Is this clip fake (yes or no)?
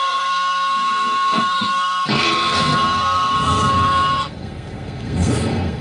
yes